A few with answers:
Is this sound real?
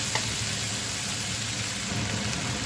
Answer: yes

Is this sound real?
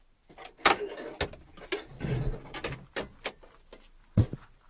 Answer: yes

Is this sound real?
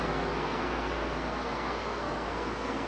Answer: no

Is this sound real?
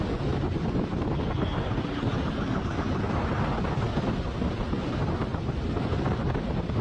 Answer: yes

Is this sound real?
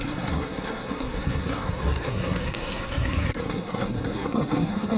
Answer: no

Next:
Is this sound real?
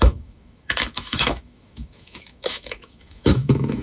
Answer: no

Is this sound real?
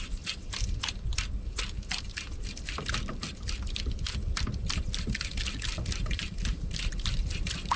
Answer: yes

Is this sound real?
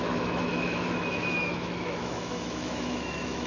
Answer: no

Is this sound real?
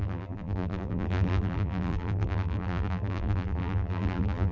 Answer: no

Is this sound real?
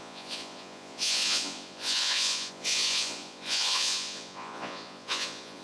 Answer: no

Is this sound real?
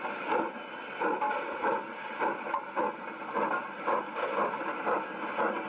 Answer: yes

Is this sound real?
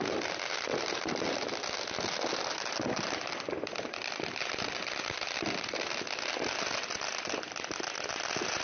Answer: yes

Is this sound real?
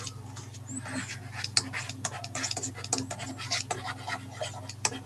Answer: yes